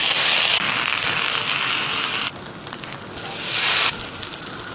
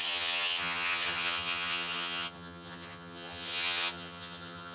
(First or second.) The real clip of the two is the first